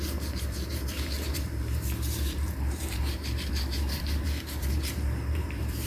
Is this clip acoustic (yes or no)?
no